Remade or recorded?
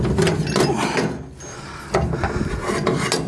recorded